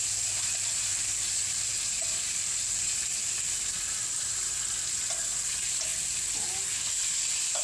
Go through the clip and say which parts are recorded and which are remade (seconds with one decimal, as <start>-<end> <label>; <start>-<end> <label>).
0.0-1.7 remade; 1.7-2.5 recorded; 2.5-3.2 remade; 3.2-4.1 recorded; 4.1-5.9 remade; 5.9-7.6 recorded